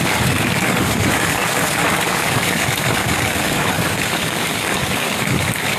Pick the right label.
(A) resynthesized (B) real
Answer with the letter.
A